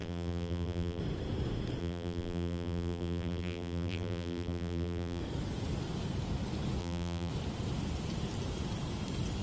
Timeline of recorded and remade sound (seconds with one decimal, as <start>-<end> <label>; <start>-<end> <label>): 0.0-1.0 remade; 1.0-1.8 recorded; 1.8-5.2 remade; 5.2-6.8 recorded; 6.8-7.3 remade; 7.3-9.4 recorded